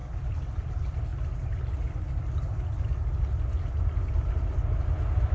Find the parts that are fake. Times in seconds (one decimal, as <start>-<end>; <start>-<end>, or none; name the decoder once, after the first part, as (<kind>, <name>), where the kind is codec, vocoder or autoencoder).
none